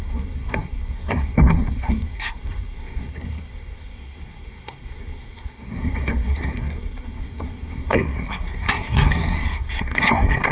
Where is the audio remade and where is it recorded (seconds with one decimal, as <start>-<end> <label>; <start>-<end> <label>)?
0.0-10.5 remade